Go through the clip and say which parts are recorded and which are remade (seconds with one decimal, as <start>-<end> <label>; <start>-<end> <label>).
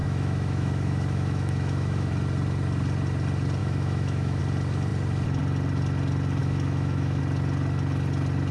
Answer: 0.0-2.1 remade; 2.1-3.6 recorded; 3.6-4.4 remade; 4.4-6.4 recorded; 6.4-7.2 remade; 7.2-8.5 recorded